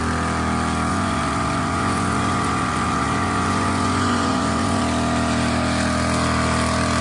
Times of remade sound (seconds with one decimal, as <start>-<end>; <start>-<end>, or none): 0.9-4.8